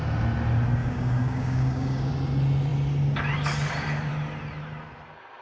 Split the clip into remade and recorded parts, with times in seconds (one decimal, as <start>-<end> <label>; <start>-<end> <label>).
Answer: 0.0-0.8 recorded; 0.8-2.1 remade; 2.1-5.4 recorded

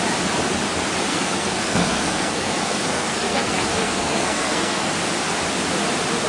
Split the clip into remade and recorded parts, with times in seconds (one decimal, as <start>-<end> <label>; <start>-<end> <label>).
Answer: 0.0-1.1 recorded; 1.1-4.9 remade; 4.9-6.3 recorded

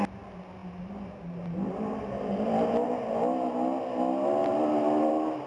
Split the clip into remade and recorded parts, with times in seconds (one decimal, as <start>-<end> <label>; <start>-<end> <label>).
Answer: 0.0-4.4 recorded; 4.4-5.1 remade; 5.1-5.5 recorded

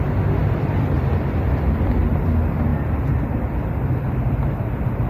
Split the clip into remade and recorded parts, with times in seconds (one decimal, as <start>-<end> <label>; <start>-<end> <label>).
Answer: 0.0-0.4 recorded; 0.4-2.0 remade; 2.0-5.1 recorded